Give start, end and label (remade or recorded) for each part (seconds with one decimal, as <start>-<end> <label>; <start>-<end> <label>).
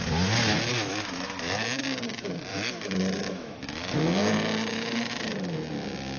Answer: 0.0-0.7 recorded; 0.7-1.8 remade; 1.8-2.5 recorded; 2.5-4.0 remade; 4.0-4.7 recorded; 4.7-5.3 remade; 5.3-6.2 recorded